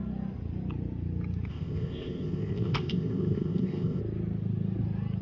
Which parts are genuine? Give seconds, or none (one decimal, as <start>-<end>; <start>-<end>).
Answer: 0.0-1.5; 4.0-5.2